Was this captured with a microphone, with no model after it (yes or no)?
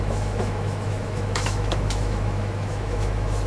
no